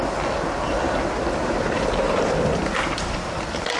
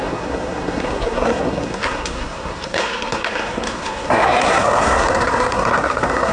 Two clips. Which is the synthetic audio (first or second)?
second